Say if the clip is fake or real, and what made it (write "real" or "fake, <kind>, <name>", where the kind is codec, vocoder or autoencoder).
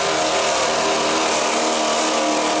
real